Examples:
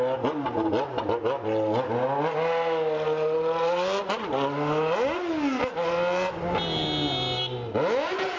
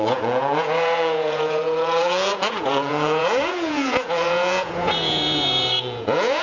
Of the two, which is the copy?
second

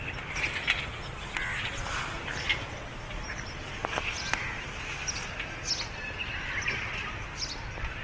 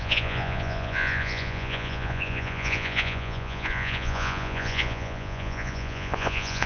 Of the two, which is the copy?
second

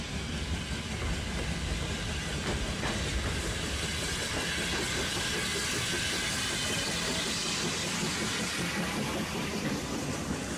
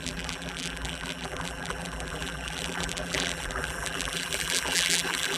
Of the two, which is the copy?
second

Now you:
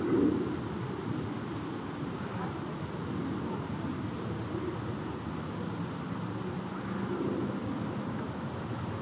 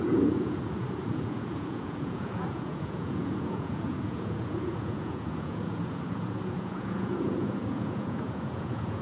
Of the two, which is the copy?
second